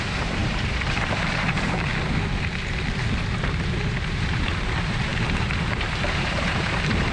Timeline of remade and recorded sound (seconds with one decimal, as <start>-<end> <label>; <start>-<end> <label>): 0.0-1.9 remade; 1.9-3.0 recorded; 3.0-7.1 remade